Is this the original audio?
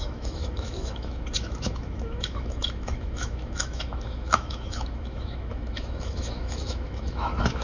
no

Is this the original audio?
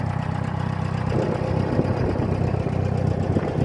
yes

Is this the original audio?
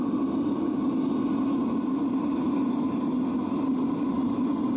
yes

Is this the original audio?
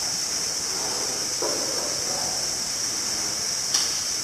yes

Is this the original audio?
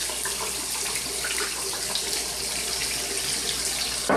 yes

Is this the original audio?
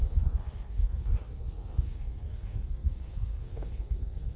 no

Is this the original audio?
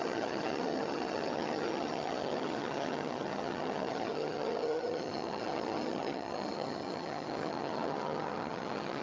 no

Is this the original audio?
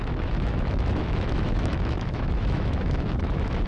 no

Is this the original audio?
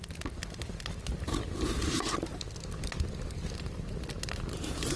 yes